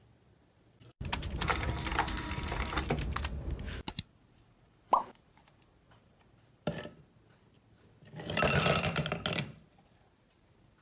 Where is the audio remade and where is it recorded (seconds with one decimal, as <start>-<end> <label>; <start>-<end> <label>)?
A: 0.0-1.9 recorded; 1.9-2.4 remade; 2.4-10.8 recorded